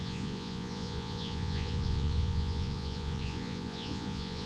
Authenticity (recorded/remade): remade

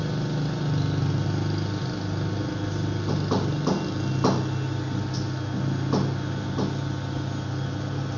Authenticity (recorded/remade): recorded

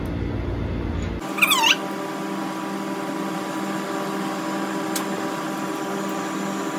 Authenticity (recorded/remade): recorded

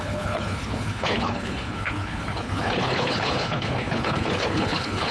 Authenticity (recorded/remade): remade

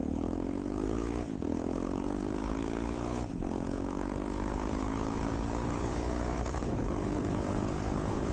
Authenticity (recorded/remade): remade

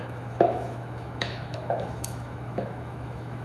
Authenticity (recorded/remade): remade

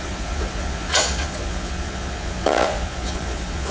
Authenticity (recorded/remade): remade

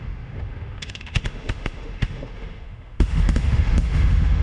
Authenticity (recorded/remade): remade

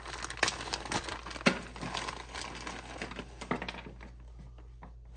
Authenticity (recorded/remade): recorded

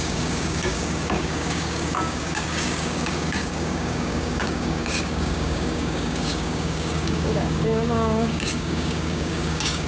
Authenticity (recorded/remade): remade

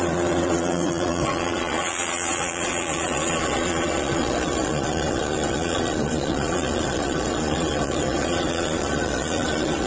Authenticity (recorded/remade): remade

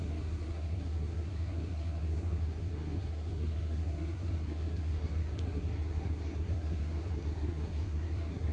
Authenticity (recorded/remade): remade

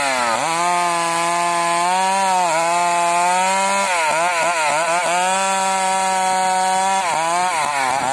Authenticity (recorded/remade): recorded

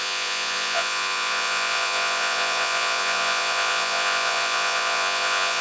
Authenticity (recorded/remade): remade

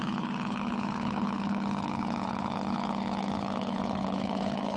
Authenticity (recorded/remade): remade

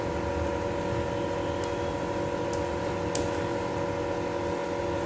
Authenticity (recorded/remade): recorded